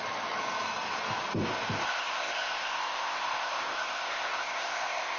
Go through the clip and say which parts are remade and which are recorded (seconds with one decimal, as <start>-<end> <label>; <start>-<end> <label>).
0.0-1.8 recorded; 1.8-5.2 remade